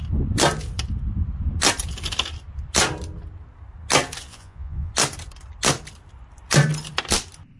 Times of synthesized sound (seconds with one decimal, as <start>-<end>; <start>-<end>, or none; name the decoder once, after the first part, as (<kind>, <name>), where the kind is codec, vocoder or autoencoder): 4.3-4.9 (vocoder, Vocos)